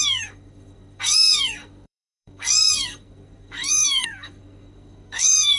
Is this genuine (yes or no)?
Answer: no